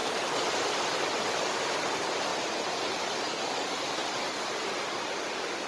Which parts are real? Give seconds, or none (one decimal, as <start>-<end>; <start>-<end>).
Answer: 0.0-5.7